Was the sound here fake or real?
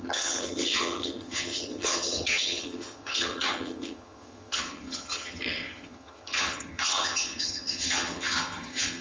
fake